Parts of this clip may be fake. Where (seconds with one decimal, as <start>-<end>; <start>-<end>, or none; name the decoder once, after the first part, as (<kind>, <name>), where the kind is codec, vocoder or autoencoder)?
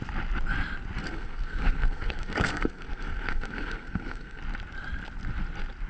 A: 1.0-4.4 (codec, SNAC)